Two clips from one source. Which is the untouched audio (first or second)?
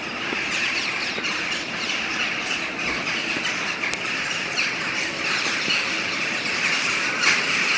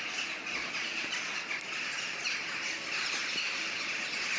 second